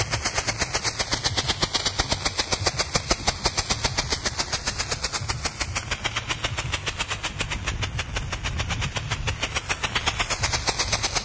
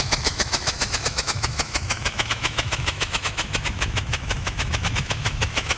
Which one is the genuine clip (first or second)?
first